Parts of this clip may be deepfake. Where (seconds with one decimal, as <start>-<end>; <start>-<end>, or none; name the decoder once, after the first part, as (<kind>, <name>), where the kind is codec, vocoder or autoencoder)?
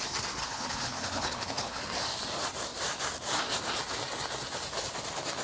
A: 0.4-1.8 (codec, HILCodec)